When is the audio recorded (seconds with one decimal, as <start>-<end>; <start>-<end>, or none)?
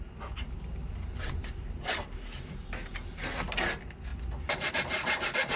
0.0-5.6